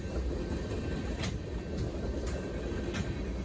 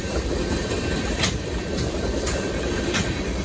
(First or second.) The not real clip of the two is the second